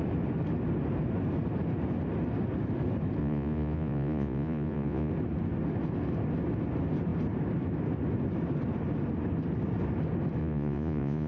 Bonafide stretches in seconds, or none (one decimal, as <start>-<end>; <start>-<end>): 0.0-3.2; 5.1-10.4